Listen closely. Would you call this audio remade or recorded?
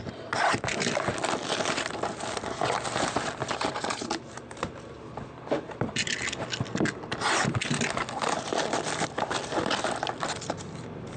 recorded